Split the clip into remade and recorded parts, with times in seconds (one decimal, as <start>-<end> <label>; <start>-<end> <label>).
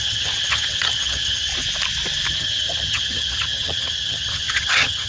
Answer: 0.0-1.5 remade; 1.5-2.3 recorded; 2.3-5.1 remade